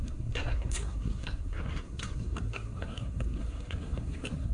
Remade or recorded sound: remade